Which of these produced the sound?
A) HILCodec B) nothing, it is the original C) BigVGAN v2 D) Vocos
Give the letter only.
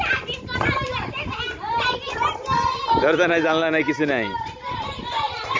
C